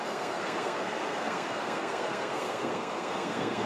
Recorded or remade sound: remade